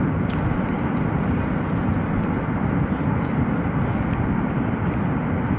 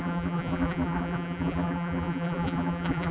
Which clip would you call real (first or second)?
first